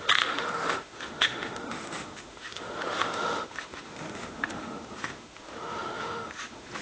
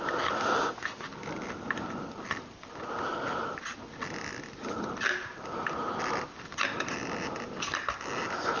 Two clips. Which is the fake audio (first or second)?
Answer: first